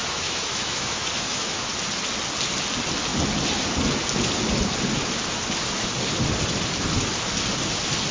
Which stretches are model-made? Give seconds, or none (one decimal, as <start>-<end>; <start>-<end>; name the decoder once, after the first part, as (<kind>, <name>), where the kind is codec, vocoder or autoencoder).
0.0-1.7 (autoencoder, DAC-VAE)